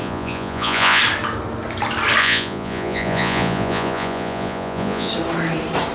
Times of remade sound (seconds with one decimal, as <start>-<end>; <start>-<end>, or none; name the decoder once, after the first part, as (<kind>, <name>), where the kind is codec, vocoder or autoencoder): 0.0-1.0 (vocoder, Vocos); 2.2-5.1